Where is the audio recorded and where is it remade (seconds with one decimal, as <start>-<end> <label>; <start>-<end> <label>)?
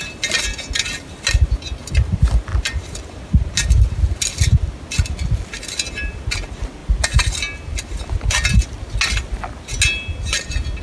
0.0-10.8 recorded